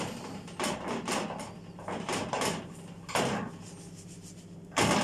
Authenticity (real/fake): real